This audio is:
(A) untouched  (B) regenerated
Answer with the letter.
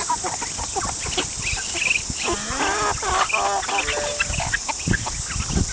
A